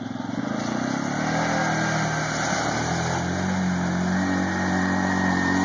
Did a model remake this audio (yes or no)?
no